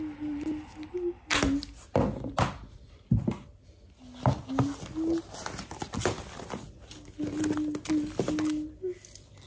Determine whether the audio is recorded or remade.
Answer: recorded